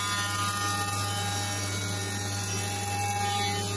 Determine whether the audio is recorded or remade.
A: recorded